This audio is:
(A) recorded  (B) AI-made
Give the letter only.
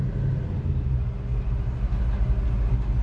A